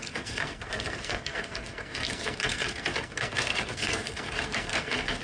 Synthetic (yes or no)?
yes